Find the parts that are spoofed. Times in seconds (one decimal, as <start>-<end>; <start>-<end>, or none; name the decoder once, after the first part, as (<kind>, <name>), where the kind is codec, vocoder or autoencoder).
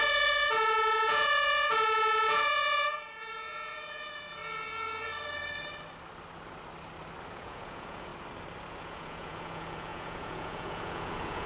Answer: 0.0-4.4 (vocoder, Vocos); 7.3-8.1; 8.8-11.5